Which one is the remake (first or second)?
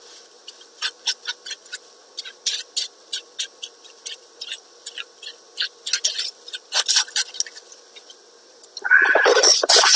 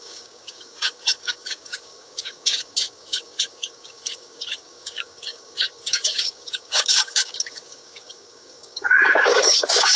second